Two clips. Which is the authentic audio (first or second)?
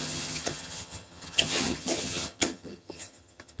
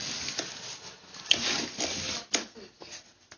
second